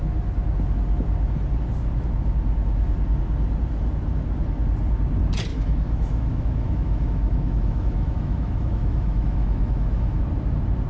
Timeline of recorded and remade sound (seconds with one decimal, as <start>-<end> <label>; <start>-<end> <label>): 0.0-5.5 recorded; 5.5-10.2 remade; 10.2-10.9 recorded

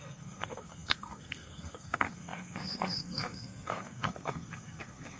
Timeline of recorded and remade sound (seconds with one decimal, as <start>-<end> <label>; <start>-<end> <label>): 0.0-5.2 remade

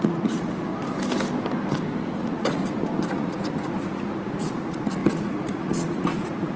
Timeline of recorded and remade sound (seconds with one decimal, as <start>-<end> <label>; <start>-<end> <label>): 0.0-0.7 remade; 0.7-2.0 recorded; 2.0-2.6 remade; 2.6-3.1 recorded; 3.1-6.6 remade

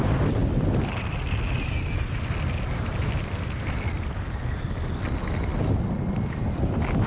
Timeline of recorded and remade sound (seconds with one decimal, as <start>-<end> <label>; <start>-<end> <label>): 0.0-7.1 recorded